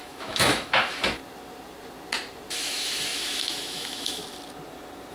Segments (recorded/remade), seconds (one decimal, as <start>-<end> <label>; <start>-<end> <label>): 0.0-1.2 remade; 1.2-2.5 recorded; 2.5-4.2 remade; 4.2-5.1 recorded